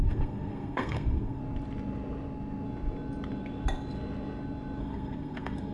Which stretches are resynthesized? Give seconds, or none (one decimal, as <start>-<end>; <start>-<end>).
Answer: 0.0-1.4; 4.8-5.7

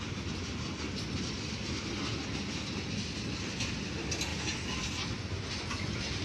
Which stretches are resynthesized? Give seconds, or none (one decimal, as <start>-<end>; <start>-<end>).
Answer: none

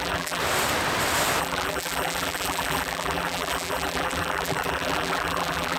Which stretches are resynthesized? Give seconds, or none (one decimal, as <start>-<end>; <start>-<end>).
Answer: 0.0-0.4; 1.4-5.8